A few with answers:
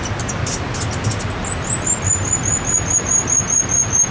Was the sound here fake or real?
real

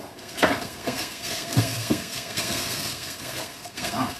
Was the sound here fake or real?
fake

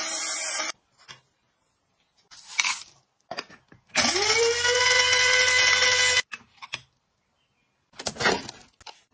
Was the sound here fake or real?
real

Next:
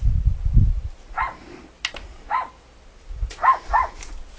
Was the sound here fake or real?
real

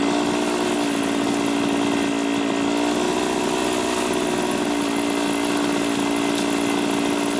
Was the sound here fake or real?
real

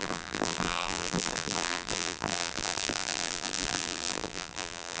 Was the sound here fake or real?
fake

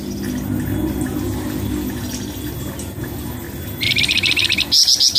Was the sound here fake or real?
real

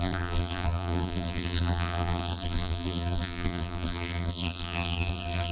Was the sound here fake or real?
fake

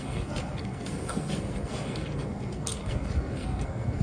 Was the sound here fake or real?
fake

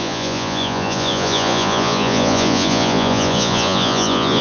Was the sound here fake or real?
fake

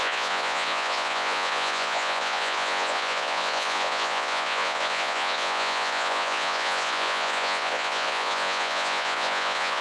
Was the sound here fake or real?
fake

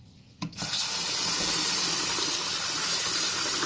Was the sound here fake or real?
real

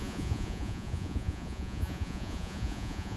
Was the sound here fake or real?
fake